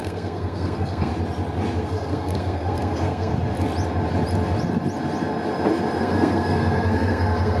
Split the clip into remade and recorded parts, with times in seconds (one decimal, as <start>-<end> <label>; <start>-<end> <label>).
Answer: 0.0-1.1 remade; 1.1-1.8 recorded; 1.8-3.3 remade; 3.3-6.0 recorded; 6.0-7.6 remade